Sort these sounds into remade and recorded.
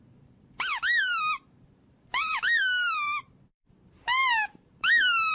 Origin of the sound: remade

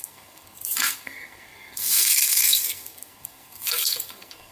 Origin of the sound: remade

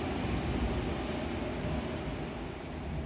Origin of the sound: recorded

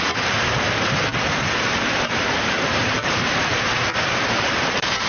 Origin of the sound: remade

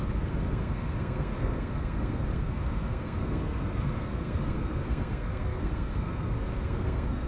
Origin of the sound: remade